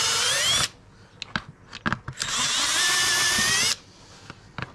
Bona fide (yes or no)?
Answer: yes